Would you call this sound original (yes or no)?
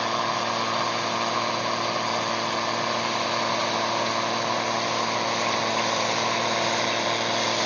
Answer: yes